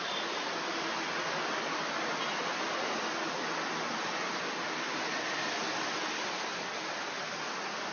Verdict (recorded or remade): recorded